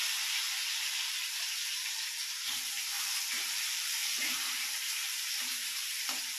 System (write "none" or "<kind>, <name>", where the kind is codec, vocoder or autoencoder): vocoder, BigVGAN v2